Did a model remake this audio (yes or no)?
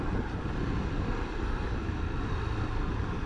no